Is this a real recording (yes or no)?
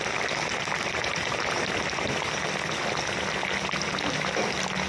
yes